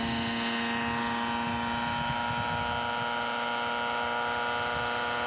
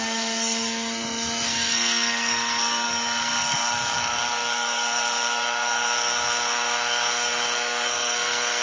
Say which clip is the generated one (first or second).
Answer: second